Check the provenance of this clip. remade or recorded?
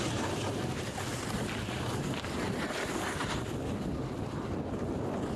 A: recorded